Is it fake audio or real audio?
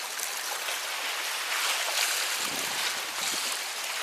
real